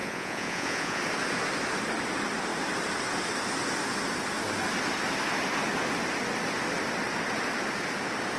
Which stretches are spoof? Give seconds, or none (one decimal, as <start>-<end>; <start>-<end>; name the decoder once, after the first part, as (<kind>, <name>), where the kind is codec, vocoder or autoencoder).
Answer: 0.0-1.0 (vocoder, Vocos)